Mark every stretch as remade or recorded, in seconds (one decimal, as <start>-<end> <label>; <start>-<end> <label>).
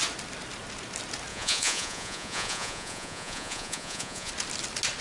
0.0-1.3 recorded; 1.3-4.3 remade; 4.3-5.0 recorded